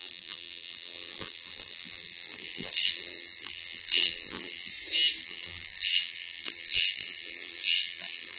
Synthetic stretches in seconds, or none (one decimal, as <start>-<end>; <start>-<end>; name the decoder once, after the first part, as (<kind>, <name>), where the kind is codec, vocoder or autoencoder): 0.0-4.7 (vocoder, BigVGAN v2); 5.2-8.4